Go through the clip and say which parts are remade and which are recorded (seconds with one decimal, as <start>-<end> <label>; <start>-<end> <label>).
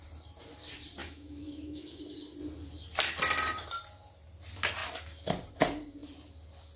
0.0-1.0 recorded; 1.0-2.0 remade; 2.0-6.8 recorded